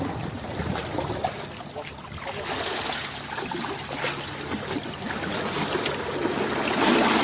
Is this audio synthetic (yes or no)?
no